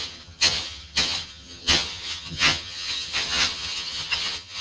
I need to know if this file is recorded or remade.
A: remade